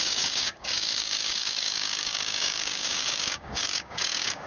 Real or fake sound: fake